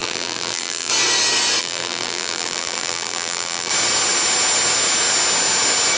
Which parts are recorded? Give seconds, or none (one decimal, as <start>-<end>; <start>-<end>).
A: 0.9-1.6; 3.7-6.0